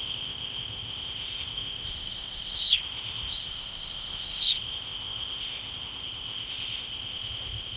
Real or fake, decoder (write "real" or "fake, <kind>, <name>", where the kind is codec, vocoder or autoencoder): fake, codec, ZipCodec